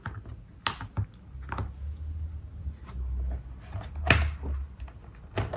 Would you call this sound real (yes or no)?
yes